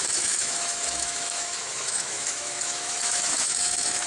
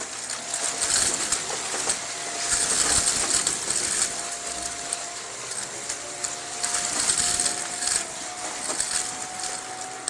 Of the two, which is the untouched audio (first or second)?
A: second